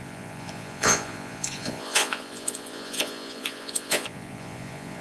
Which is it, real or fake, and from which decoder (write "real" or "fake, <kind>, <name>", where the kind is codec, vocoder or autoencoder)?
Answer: fake, vocoder, Vocos